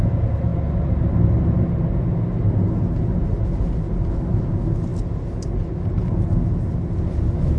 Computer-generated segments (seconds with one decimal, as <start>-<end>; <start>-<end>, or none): none